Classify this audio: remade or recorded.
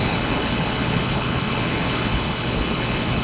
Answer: remade